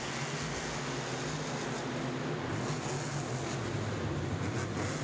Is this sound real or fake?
real